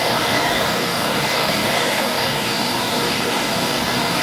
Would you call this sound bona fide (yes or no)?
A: no